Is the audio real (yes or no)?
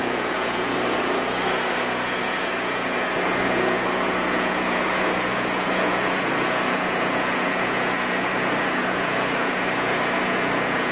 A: no